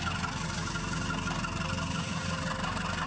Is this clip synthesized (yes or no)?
no